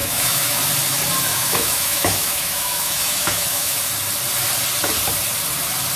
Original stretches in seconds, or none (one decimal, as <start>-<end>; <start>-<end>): 0.6-1.3; 3.8-6.0